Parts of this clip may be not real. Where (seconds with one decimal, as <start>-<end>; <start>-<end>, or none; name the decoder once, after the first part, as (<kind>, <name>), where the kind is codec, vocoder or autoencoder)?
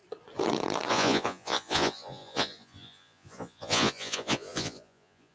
0.9-5.3 (vocoder, Vocos)